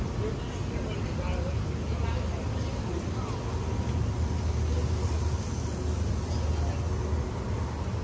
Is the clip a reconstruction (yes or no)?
no